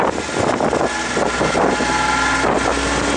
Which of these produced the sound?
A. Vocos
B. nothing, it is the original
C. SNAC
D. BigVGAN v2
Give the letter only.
B